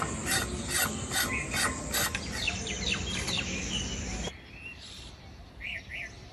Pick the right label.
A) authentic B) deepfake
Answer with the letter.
A